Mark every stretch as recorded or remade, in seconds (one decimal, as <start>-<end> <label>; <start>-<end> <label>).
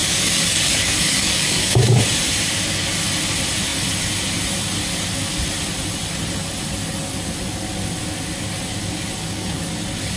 0.0-2.0 remade; 2.0-9.2 recorded; 9.2-9.7 remade; 9.7-10.2 recorded